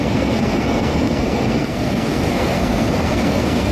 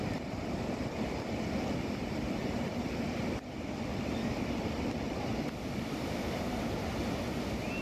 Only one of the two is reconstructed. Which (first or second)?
first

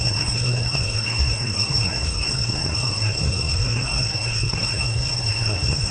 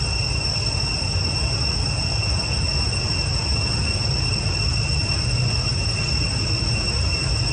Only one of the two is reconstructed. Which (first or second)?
first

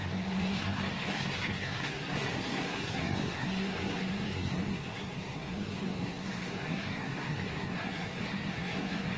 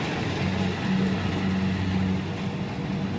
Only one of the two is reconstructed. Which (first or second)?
first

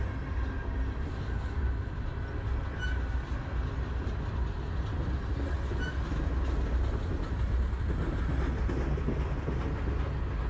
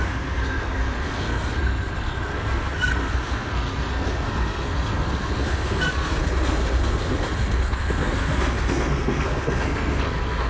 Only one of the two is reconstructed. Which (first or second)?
second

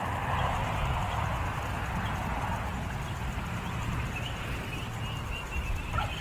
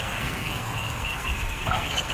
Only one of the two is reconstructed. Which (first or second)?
second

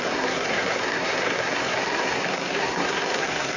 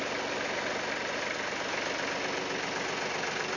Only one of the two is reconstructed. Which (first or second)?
first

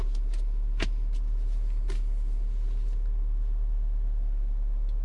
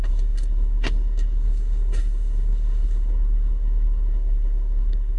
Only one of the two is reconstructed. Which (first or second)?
second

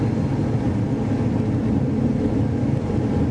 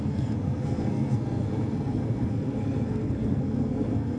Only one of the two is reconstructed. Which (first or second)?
second